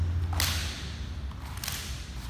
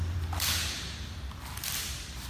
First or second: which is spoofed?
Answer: second